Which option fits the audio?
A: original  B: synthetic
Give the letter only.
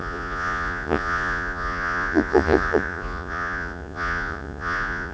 B